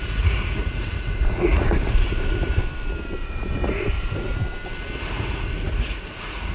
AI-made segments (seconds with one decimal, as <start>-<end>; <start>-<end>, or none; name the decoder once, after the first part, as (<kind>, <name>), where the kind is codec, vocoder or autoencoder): 0.0-2.6 (vocoder, Vocos); 3.2-4.3; 5.1-6.5